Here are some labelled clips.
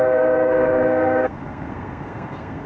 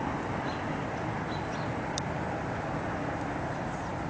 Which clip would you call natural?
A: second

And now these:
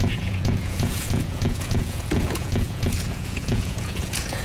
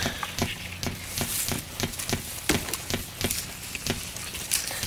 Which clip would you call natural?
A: second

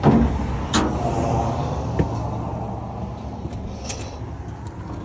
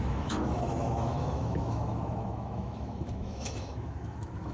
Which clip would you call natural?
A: first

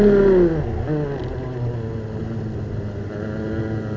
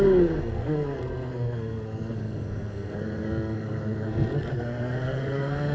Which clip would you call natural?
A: first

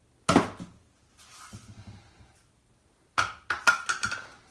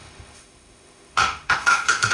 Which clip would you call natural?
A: first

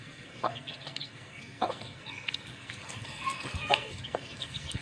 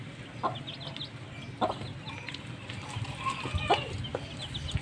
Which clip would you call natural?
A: second